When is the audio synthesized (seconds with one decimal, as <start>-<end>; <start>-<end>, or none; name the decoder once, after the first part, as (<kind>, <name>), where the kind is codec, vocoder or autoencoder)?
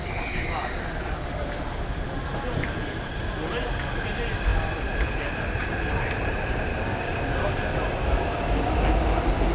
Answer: 6.7-7.7 (codec, DAC)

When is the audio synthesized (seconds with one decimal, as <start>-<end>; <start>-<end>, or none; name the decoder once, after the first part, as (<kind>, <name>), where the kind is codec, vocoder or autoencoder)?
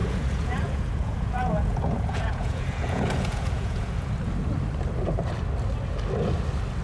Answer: 0.0-4.1 (vocoder, Vocos)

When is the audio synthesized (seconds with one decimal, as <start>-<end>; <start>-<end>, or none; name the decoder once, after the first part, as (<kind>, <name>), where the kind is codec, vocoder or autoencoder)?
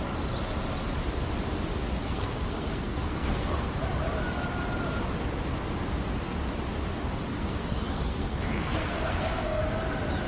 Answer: 2.0-3.7 (codec, SNAC); 7.3-9.6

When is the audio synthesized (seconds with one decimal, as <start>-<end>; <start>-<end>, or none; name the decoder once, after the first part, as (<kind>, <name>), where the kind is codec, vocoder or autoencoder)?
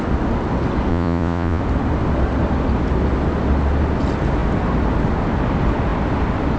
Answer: 0.9-1.6 (vocoder, Vocos)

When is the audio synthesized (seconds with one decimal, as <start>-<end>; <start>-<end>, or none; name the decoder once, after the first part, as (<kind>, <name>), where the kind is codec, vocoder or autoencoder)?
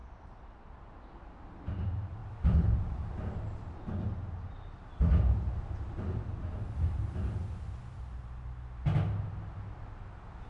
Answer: 0.0-0.9 (vocoder, BigVGAN v2); 2.2-3.1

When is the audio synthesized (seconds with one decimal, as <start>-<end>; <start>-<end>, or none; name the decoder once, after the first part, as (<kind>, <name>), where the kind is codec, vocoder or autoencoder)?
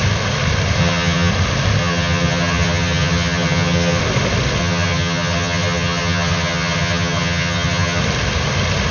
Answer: 0.8-1.3 (vocoder, HiFi-GAN); 1.8-4.0; 4.6-8.0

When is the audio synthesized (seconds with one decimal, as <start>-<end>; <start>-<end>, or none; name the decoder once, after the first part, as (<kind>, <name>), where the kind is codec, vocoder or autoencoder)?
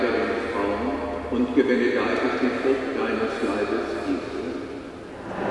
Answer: none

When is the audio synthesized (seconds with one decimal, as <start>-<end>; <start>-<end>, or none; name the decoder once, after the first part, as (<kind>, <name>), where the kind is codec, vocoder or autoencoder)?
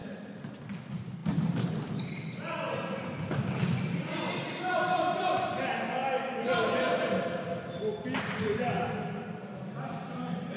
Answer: none